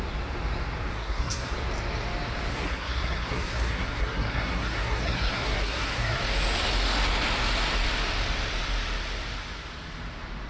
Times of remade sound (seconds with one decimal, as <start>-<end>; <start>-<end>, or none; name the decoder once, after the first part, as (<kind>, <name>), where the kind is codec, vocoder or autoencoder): 0.9-1.5 (codec, SNAC); 2.5-6.2